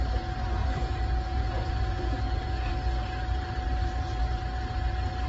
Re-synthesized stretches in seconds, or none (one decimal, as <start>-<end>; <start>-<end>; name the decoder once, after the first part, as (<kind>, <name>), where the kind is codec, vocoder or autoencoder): 0.6-2.7 (vocoder, Vocos)

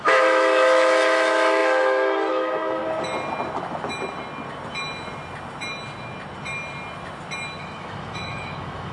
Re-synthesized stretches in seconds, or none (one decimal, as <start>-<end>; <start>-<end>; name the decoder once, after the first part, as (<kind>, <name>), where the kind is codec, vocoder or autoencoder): 0.0-2.8 (autoencoder, DAC-VAE); 7.6-8.9

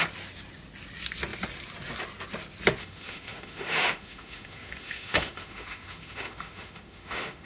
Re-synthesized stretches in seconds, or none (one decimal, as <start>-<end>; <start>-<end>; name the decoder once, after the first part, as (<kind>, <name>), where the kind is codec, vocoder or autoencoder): 2.8-7.5 (autoencoder, DAC-VAE)

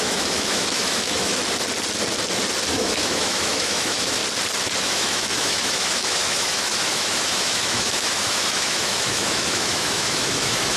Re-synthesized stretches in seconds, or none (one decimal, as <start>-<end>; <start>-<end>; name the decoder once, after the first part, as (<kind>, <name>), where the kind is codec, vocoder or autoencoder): 0.0-1.4 (autoencoder, DAC-VAE); 2.7-4.2; 4.8-10.8

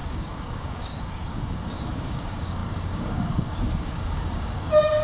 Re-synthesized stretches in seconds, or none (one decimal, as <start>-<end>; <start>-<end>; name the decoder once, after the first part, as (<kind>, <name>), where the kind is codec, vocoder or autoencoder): 0.0-5.0 (codec, DAC)

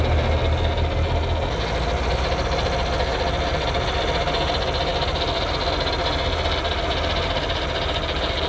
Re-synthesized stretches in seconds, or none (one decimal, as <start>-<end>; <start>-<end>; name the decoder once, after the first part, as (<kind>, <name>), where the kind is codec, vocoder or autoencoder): none

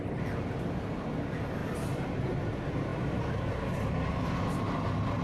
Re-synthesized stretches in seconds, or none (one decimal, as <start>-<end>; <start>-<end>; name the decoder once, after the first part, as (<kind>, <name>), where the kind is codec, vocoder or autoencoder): 2.9-3.6 (vocoder, BigVGAN v2)